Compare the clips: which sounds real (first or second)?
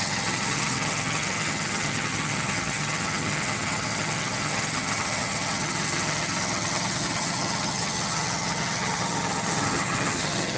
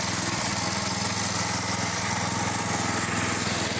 second